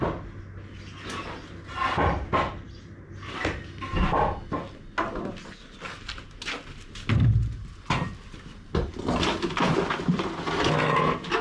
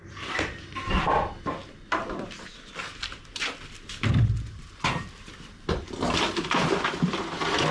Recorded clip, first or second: first